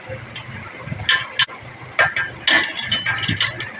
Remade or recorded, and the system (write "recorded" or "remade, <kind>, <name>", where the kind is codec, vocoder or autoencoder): recorded